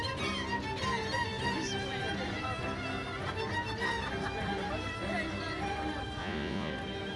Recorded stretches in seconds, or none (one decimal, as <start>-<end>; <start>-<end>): 0.0-6.2; 6.7-7.2